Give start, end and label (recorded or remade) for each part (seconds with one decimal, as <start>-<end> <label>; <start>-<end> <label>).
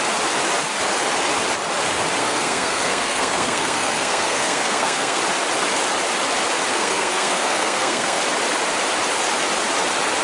0.0-2.2 recorded; 2.2-5.2 remade; 5.2-6.7 recorded; 6.7-8.2 remade; 8.2-10.2 recorded